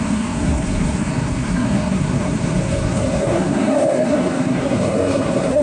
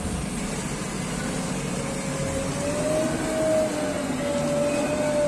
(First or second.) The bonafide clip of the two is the second